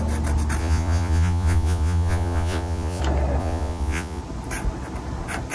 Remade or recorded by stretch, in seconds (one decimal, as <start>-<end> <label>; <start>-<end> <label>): 0.0-0.6 recorded; 0.6-3.0 remade; 3.0-3.4 recorded; 3.4-4.2 remade; 4.2-5.5 recorded